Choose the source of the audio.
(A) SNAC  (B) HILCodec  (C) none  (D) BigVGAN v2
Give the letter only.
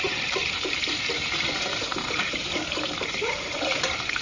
D